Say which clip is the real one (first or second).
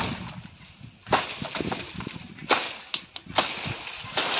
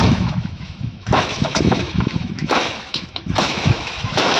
first